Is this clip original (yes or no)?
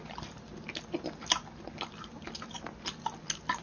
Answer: yes